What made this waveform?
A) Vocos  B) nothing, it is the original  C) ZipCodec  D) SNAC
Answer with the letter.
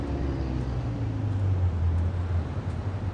B